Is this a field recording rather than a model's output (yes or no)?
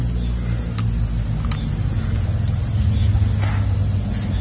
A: yes